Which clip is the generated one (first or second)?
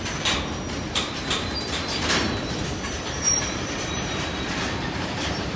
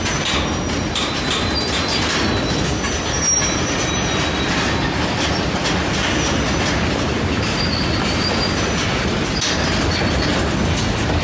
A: first